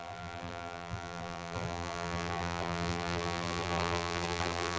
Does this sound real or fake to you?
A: fake